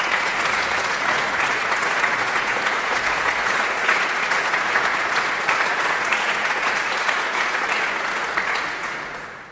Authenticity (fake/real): fake